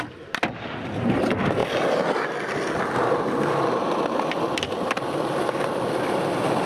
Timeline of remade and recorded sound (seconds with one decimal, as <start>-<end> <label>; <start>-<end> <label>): 0.0-6.7 recorded

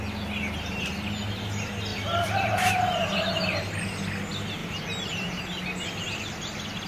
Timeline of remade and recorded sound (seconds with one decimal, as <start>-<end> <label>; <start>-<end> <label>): 0.0-1.9 recorded; 1.9-3.3 remade; 3.3-4.6 recorded; 4.6-5.4 remade; 5.4-6.9 recorded

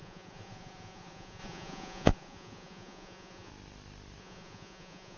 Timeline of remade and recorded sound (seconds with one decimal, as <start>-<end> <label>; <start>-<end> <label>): 0.0-3.5 remade; 3.5-4.2 recorded; 4.2-5.2 remade

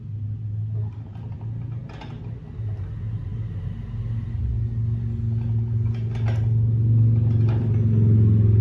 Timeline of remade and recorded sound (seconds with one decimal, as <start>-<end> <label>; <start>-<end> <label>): 0.0-8.6 recorded